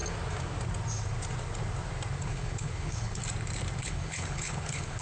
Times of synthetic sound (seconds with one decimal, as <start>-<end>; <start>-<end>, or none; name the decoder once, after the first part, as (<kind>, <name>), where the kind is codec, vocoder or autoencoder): 2.2-3.2 (codec, HILCodec); 3.8-5.0

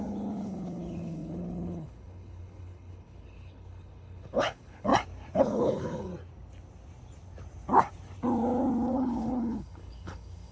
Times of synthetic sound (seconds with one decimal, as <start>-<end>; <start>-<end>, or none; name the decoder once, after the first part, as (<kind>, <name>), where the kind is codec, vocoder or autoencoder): 0.0-4.9 (codec, HILCodec); 5.4-6.1; 8.9-10.5